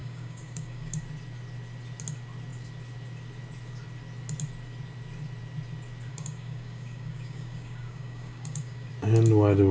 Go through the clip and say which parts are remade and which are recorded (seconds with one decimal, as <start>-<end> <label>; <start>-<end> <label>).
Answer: 0.0-1.0 remade; 1.0-6.1 recorded; 6.1-8.9 remade; 8.9-9.7 recorded